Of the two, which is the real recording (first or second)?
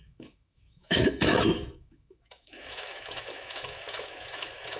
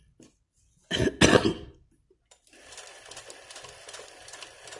second